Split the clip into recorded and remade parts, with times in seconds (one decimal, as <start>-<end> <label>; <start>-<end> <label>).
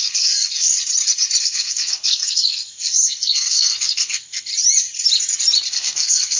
0.0-0.7 remade; 0.7-1.4 recorded; 1.4-4.5 remade; 4.5-5.7 recorded; 5.7-6.4 remade